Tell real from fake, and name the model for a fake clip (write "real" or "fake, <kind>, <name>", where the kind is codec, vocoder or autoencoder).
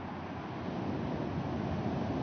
real